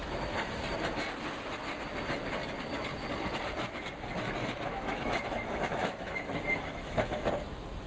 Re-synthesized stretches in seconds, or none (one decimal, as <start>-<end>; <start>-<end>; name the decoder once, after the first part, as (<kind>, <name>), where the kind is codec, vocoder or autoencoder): 0.0-0.6 (autoencoder, DAC-VAE); 4.4-7.3